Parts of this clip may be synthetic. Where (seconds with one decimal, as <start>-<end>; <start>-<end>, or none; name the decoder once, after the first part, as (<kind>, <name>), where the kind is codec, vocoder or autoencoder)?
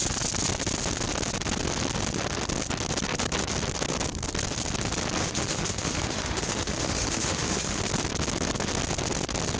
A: 5.2-7.8 (autoencoder, DAC-VAE)